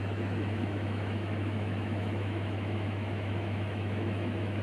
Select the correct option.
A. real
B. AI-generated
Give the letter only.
B